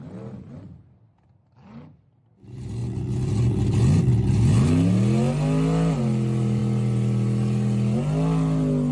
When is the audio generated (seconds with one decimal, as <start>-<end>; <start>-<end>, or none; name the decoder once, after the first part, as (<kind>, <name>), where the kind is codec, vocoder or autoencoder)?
none